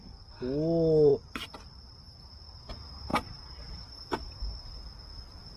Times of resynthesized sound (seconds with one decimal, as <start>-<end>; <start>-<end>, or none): 1.1-2.7; 3.1-4.3